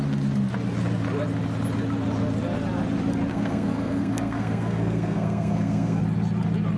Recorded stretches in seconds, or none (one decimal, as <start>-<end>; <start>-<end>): 0.0-3.3; 6.0-6.8